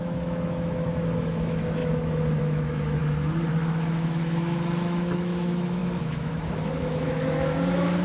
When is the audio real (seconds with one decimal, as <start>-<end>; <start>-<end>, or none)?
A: 3.0-3.5